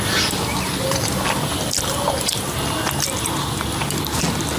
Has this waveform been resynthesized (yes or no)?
no